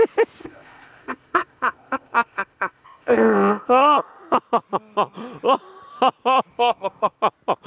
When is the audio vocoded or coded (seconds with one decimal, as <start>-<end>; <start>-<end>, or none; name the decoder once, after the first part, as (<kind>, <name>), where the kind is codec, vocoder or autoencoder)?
0.4-4.0 (codec, ZipCodec); 6.5-7.2